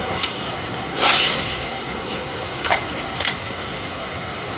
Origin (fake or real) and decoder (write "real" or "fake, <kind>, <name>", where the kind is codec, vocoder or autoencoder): fake, codec, SNAC